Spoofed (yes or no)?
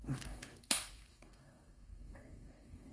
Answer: yes